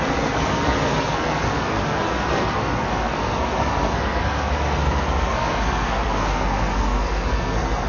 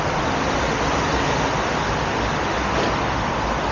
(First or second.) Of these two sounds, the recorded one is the second